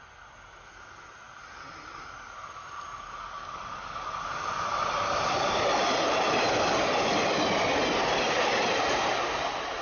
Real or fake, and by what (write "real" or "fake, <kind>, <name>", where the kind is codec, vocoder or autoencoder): real